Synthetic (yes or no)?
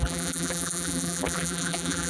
yes